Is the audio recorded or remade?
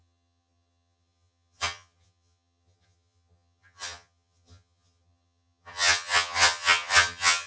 remade